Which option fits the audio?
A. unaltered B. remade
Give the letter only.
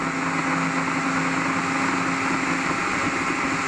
A